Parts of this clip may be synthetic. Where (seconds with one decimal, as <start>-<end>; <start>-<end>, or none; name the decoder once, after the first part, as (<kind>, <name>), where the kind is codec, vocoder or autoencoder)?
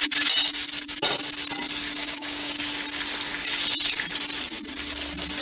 2.0-2.6 (codec, DAC)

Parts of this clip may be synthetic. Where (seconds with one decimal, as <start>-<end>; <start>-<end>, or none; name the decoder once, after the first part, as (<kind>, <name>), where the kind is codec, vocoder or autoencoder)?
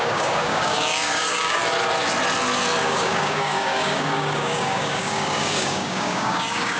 0.0-1.6 (codec, DAC); 2.8-6.8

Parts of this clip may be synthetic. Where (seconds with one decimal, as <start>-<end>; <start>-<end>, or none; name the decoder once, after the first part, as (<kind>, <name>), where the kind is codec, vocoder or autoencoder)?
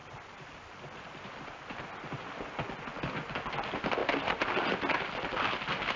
none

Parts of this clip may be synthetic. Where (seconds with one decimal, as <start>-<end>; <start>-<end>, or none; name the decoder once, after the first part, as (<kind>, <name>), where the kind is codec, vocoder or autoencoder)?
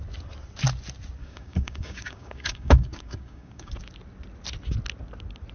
1.2-3.7 (codec, DAC)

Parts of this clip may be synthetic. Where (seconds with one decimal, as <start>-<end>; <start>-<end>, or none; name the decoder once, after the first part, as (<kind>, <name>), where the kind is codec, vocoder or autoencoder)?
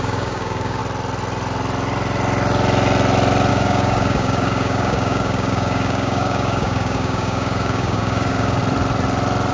0.0-0.8 (codec, DAC); 3.5-8.6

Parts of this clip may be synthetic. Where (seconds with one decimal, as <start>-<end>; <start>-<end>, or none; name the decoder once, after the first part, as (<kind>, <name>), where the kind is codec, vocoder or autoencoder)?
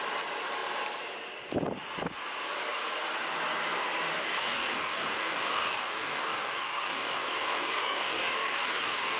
4.2-9.2 (codec, DAC)